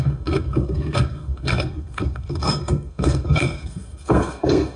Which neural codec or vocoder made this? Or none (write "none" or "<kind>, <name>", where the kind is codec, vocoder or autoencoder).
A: codec, SNAC